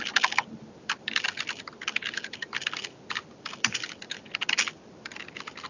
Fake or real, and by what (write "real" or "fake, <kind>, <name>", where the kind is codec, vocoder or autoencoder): real